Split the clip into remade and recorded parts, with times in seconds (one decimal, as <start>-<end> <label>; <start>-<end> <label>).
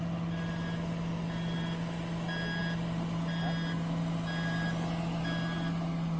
0.0-6.2 recorded